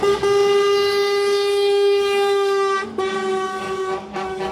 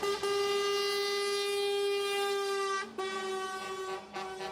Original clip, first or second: second